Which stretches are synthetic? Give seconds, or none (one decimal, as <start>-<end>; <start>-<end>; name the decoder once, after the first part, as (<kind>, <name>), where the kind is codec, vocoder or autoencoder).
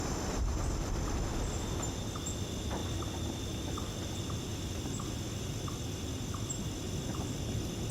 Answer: none